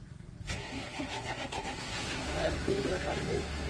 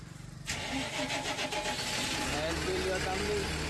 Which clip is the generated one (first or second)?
first